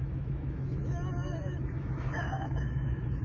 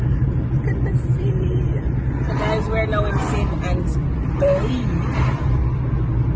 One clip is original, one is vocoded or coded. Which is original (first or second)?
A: second